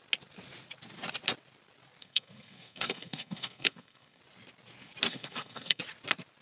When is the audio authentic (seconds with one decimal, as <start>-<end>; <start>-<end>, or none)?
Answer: 0.0-2.0; 4.2-5.1; 5.8-6.4